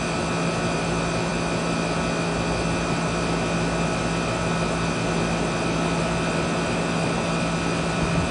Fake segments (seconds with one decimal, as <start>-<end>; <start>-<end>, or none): none